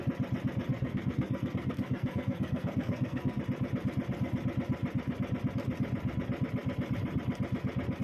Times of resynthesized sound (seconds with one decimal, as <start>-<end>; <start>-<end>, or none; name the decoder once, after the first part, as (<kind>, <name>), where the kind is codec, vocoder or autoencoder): 0.7-3.4 (codec, SNAC)